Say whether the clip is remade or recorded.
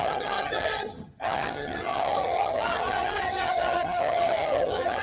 remade